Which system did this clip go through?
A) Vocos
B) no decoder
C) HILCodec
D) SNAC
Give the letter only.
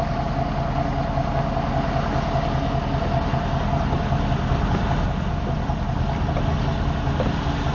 B